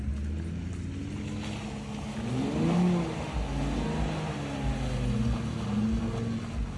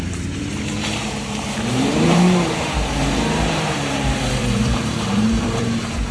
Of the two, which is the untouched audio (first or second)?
first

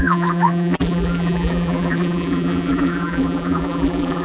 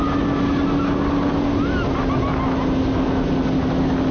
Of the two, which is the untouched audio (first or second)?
second